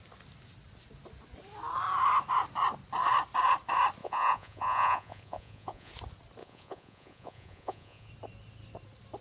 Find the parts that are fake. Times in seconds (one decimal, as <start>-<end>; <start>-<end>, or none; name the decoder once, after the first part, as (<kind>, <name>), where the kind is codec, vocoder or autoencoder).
4.0-5.9 (vocoder, Vocos); 6.4-8.1